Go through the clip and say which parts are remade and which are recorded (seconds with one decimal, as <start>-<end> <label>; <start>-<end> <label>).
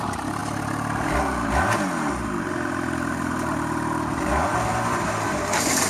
0.0-0.4 remade; 0.4-2.1 recorded; 2.1-5.9 remade